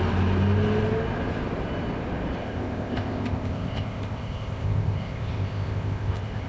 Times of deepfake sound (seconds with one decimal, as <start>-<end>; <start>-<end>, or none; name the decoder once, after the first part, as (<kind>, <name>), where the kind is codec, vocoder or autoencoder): 2.4-6.5 (codec, ZipCodec)